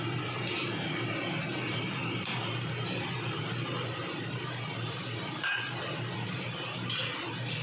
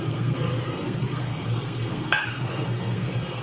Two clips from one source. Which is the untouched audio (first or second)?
first